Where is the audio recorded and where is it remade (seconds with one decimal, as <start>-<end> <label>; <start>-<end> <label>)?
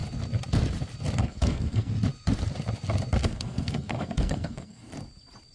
0.0-1.2 recorded; 1.2-1.9 remade; 1.9-3.2 recorded; 3.2-4.9 remade; 4.9-5.5 recorded